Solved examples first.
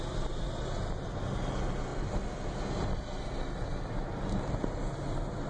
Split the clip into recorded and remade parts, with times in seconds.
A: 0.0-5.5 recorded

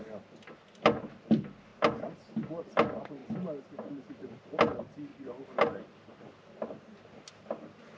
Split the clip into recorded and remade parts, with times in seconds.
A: 0.0-8.0 recorded

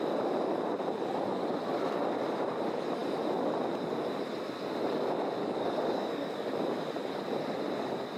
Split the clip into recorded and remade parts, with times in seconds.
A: 0.0-5.4 recorded; 5.4-6.5 remade; 6.5-8.2 recorded

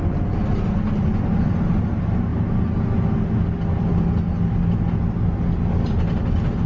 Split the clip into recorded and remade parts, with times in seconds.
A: 0.0-6.7 recorded

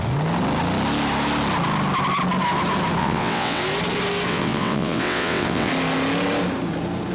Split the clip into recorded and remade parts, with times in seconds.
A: 0.0-3.0 recorded; 3.0-3.6 remade; 3.6-4.3 recorded; 4.3-5.7 remade; 5.7-7.1 recorded

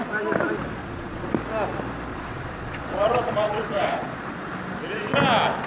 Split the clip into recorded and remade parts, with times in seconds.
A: 0.0-0.8 recorded; 0.8-1.3 remade; 1.3-2.1 recorded; 2.1-4.5 remade; 4.5-5.7 recorded

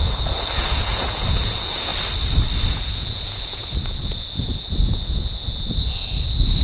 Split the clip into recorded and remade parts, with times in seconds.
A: 0.0-1.9 remade; 1.9-2.7 recorded; 2.7-6.6 remade

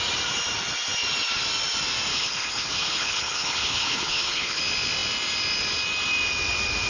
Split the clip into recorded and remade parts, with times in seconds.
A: 0.0-2.1 recorded; 2.1-4.6 remade; 4.6-6.9 recorded